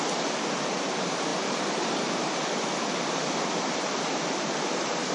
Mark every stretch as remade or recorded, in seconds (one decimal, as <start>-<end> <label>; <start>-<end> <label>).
0.0-5.1 recorded